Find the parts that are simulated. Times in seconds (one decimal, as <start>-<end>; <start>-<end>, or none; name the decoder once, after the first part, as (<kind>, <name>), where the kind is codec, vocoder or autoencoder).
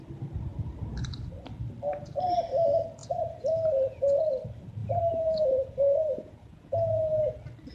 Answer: 3.0-4.2 (vocoder, Vocos); 4.8-7.3